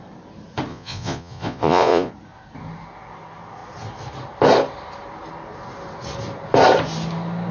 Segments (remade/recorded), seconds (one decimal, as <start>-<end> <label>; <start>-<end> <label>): 0.0-0.7 recorded; 0.7-2.1 remade; 2.1-7.5 recorded